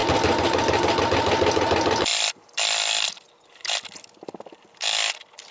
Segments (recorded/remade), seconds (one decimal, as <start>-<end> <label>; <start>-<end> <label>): 0.0-1.0 remade; 1.0-2.1 recorded; 2.1-4.7 remade; 4.7-5.5 recorded